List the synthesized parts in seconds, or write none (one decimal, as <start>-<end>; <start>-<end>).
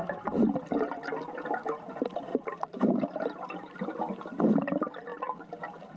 2.3-3.9